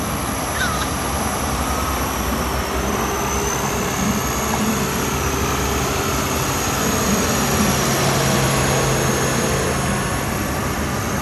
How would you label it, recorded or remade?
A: recorded